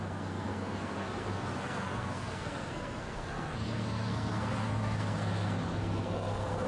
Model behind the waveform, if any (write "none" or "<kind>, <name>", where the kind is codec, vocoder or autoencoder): codec, SNAC